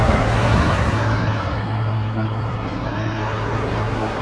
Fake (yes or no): yes